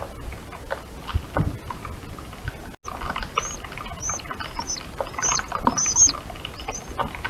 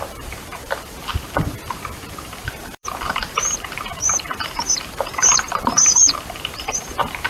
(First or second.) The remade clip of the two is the second